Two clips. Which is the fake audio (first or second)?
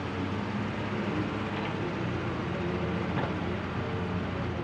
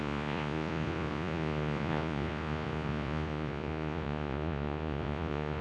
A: second